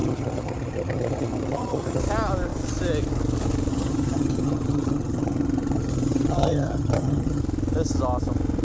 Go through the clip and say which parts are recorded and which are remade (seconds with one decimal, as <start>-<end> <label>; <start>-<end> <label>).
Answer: 0.0-2.0 remade; 2.0-3.7 recorded; 3.7-7.4 remade; 7.4-8.6 recorded